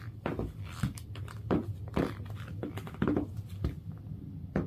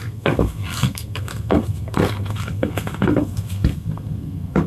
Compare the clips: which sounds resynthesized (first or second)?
second